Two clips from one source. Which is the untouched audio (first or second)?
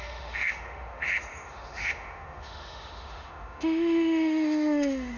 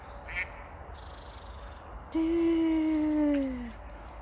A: second